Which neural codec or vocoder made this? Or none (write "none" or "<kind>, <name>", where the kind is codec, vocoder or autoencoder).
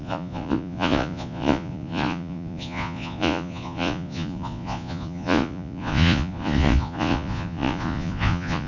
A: vocoder, Vocos